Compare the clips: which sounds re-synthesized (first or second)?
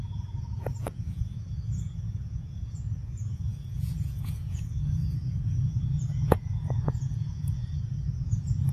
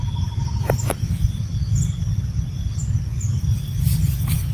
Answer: first